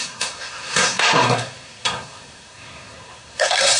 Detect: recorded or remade remade